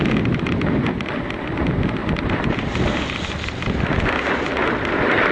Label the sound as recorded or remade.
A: recorded